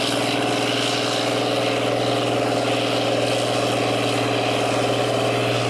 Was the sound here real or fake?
real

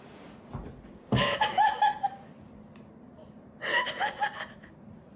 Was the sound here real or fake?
real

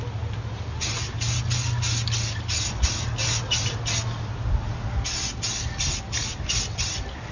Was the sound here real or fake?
real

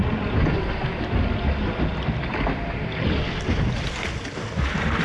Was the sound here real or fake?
real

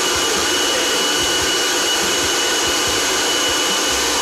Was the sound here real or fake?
fake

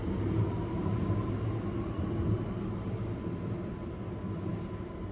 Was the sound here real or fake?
real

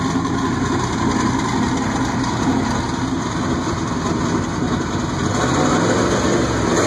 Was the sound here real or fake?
real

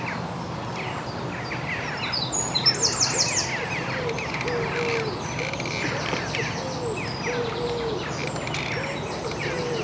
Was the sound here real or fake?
real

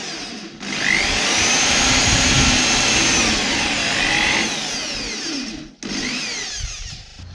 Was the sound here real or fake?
real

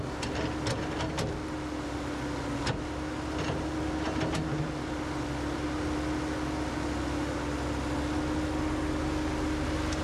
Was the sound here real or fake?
real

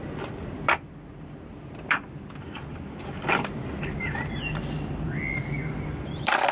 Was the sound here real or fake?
fake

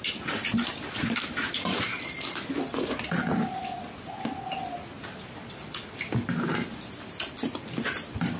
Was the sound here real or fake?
real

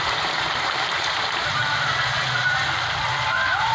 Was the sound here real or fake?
fake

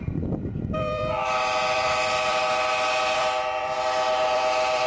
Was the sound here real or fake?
fake